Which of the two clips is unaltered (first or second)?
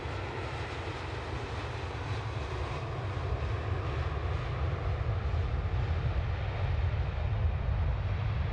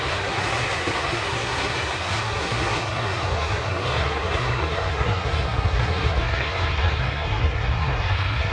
first